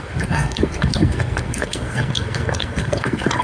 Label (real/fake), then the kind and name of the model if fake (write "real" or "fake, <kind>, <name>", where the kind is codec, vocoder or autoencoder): fake, codec, SNAC